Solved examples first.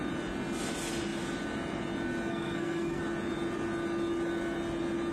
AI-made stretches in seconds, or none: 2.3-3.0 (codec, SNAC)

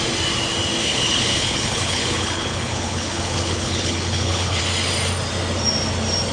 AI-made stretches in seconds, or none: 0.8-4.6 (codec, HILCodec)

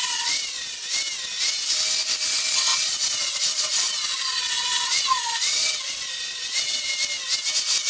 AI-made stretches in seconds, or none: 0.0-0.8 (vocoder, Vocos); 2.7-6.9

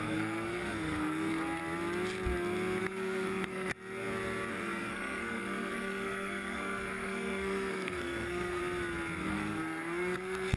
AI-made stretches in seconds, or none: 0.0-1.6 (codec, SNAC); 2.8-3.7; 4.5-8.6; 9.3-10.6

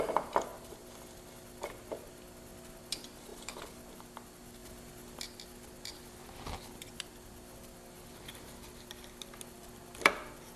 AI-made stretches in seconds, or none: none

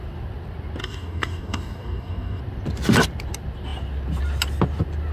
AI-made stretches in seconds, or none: 0.8-2.4 (codec, DAC)